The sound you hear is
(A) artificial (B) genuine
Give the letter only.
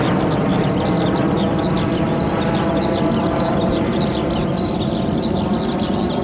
B